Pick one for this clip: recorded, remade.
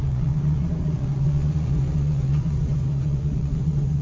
remade